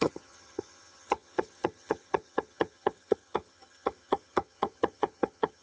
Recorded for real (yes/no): no